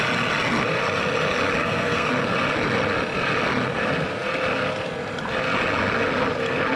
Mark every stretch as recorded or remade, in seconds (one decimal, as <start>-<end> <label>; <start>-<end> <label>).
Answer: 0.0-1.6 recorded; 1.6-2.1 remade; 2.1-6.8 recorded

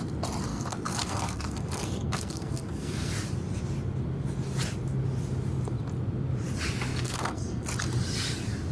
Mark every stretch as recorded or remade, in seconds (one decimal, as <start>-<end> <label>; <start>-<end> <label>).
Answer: 0.0-0.5 recorded; 0.5-3.1 remade; 3.1-6.9 recorded; 6.9-7.6 remade; 7.6-8.7 recorded

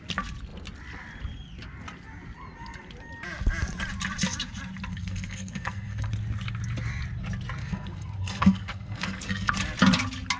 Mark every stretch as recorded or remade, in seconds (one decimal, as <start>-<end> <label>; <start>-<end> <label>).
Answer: 0.0-4.9 recorded; 4.9-6.1 remade; 6.1-7.6 recorded; 7.6-9.5 remade; 9.5-10.4 recorded